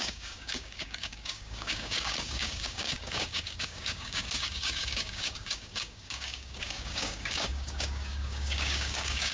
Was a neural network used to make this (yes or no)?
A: yes